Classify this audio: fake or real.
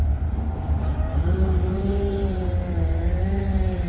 fake